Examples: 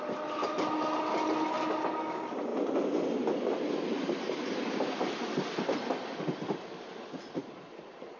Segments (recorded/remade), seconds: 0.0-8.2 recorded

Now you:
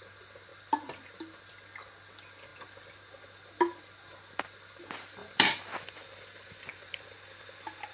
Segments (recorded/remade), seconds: 0.0-5.2 recorded; 5.2-6.9 remade; 6.9-7.9 recorded

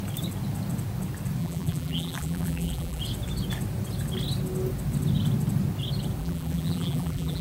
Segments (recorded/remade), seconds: 0.0-1.4 recorded; 1.4-3.0 remade; 3.0-6.2 recorded; 6.2-7.4 remade